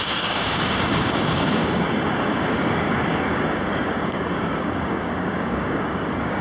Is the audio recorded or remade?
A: remade